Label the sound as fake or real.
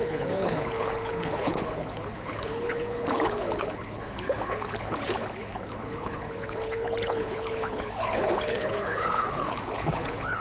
fake